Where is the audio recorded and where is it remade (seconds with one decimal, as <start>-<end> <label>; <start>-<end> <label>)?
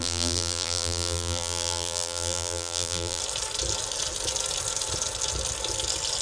0.0-3.2 remade; 3.2-6.2 recorded